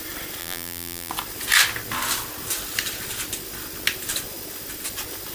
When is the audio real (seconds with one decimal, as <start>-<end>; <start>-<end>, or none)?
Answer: 0.0-0.4; 1.1-5.3